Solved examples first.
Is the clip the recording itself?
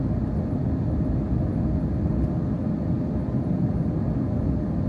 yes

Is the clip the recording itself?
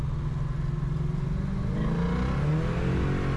yes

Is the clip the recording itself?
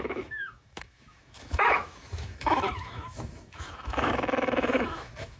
no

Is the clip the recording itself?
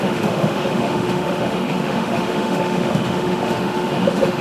no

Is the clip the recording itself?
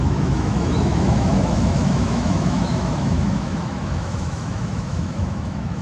no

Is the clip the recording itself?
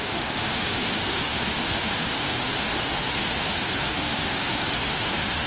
no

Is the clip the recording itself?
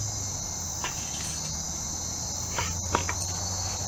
yes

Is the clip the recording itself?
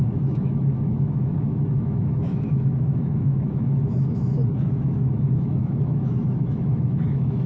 no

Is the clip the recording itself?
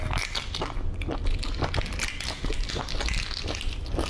yes